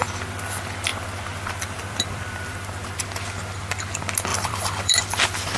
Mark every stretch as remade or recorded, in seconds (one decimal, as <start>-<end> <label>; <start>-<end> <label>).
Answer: 0.0-0.9 recorded; 0.9-3.0 remade; 3.0-4.3 recorded; 4.3-4.9 remade; 4.9-5.6 recorded